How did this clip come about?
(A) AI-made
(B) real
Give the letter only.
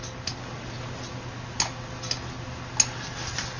B